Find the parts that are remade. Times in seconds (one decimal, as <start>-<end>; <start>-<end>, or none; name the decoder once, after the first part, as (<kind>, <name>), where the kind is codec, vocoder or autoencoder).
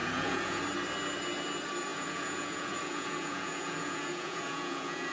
0.0-0.6 (vocoder, Vocos); 1.9-5.1